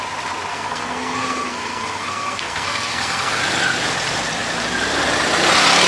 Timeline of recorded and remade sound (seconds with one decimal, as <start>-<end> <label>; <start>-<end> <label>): 0.0-0.5 recorded; 0.5-3.4 remade; 3.4-5.9 recorded

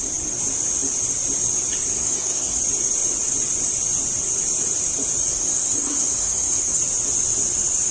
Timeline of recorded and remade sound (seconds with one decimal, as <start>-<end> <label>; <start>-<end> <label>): 0.0-1.9 recorded; 1.9-2.6 remade; 2.6-5.3 recorded; 5.3-6.8 remade; 6.8-7.9 recorded

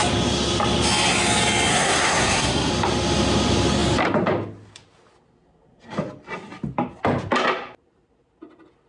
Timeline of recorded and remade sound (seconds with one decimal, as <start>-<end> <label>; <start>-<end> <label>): 0.0-1.7 recorded; 1.7-2.7 remade; 2.7-8.9 recorded